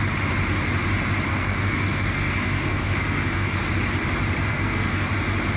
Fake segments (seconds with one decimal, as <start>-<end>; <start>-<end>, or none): 1.3-3.6; 4.5-5.1